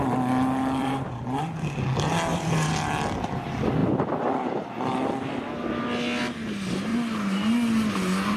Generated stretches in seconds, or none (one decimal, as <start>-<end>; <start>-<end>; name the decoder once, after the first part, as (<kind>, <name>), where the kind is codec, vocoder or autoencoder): 0.8-1.4 (vocoder, BigVGAN v2); 2.3-2.9